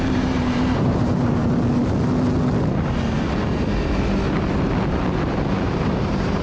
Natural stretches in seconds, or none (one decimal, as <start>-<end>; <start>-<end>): 1.4-5.2